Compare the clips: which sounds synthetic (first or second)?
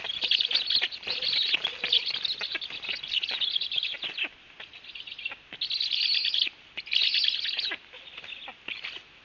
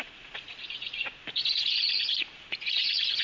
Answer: second